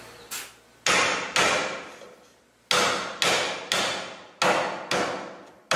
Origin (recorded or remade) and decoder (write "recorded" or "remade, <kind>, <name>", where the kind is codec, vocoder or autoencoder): recorded